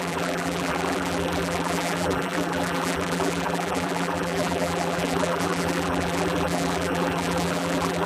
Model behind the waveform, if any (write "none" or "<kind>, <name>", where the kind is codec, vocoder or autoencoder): vocoder, BigVGAN v2